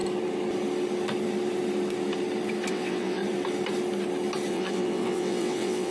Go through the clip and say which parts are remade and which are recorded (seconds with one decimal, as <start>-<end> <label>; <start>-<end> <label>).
0.0-2.7 recorded; 2.7-3.2 remade; 3.2-4.5 recorded; 4.5-5.9 remade